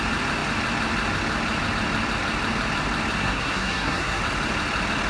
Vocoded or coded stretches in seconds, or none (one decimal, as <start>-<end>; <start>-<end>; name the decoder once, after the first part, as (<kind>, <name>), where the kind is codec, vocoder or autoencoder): 3.2-4.2 (codec, SNAC)